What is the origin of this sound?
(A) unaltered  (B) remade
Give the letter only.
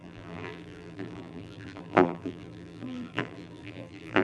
B